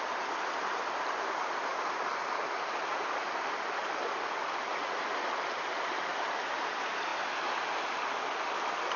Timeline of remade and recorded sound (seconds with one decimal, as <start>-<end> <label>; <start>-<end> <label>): 0.0-9.0 recorded